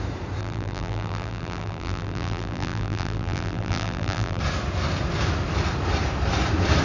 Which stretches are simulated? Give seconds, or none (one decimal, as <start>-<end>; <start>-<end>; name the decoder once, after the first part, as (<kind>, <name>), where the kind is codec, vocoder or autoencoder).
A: 0.4-4.4 (vocoder, BigVGAN v2)